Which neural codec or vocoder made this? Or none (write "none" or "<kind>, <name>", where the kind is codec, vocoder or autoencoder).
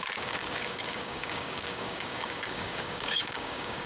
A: codec, DAC